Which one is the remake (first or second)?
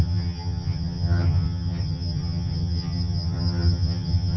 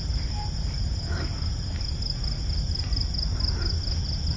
first